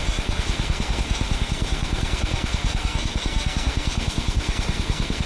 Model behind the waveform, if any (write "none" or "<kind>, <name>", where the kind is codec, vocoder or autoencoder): codec, SNAC